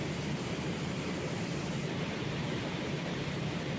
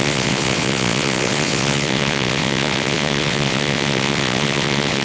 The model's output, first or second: second